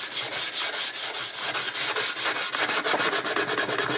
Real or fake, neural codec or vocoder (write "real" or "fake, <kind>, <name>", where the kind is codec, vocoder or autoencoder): real